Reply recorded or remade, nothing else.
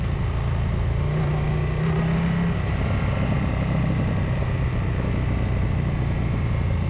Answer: recorded